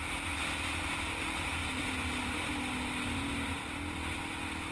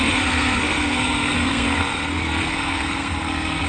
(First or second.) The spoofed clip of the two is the second